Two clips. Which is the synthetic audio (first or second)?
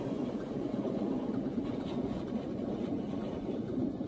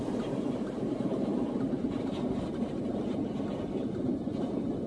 first